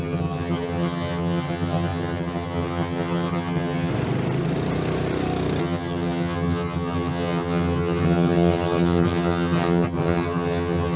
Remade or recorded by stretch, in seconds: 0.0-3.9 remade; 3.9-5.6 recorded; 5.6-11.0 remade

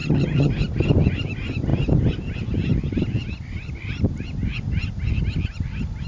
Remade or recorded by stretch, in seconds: 0.0-0.5 remade; 0.5-6.1 recorded

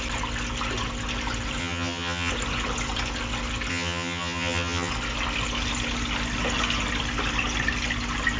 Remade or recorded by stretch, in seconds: 0.0-1.6 recorded; 1.6-2.3 remade; 2.3-3.7 recorded; 3.7-4.9 remade; 4.9-8.4 recorded

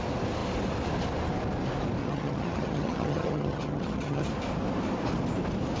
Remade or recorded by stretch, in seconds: 0.0-2.0 recorded; 2.0-4.3 remade; 4.3-5.8 recorded

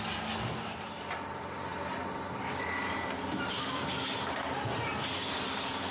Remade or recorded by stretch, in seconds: 0.0-5.9 recorded

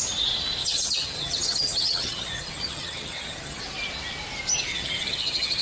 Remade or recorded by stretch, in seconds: 0.0-0.6 recorded; 0.6-3.6 remade; 3.6-4.7 recorded; 4.7-5.6 remade